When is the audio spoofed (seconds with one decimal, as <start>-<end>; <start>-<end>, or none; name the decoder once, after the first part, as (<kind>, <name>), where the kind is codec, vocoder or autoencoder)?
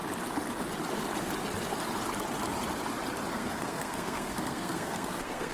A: 3.3-5.5 (codec, SNAC)